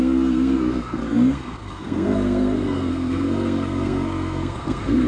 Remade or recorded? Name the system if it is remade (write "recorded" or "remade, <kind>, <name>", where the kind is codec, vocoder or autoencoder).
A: remade, codec, SNAC